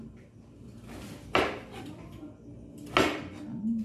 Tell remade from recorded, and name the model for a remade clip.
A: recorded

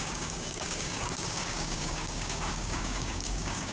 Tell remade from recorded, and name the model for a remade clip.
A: remade, codec, DAC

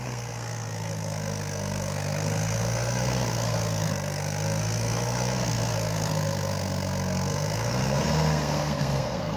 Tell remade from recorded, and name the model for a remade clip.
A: remade, codec, SNAC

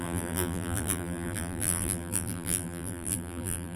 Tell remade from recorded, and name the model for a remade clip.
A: remade, vocoder, BigVGAN v2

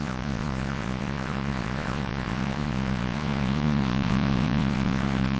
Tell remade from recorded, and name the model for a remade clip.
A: remade, vocoder, Vocos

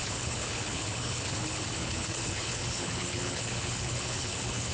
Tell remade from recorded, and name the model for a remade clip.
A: remade, codec, HILCodec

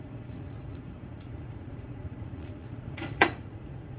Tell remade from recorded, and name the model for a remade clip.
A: remade, vocoder, Vocos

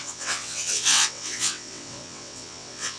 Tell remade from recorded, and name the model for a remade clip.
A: remade, vocoder, WaveNeXt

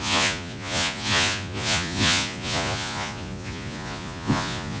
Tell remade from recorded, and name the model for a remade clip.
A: remade, vocoder, Vocos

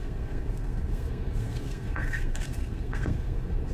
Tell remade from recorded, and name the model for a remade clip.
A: remade, codec, SNAC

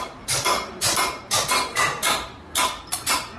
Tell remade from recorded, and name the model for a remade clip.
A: remade, vocoder, BigVGAN v2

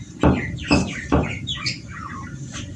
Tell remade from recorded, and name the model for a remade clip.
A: remade, vocoder, BigVGAN v2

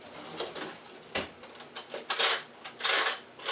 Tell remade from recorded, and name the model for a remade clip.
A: recorded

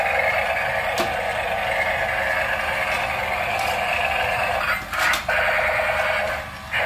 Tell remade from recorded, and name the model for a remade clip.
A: recorded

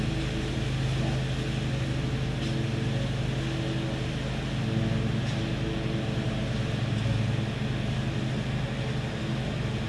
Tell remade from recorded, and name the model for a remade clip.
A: recorded